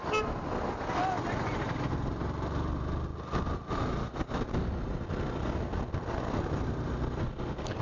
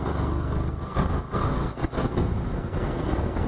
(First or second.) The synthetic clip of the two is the second